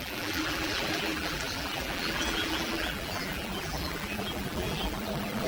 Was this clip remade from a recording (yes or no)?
yes